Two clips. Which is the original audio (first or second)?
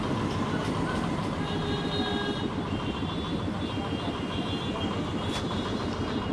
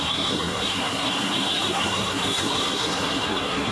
first